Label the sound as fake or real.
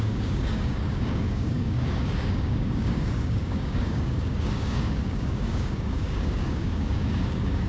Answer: fake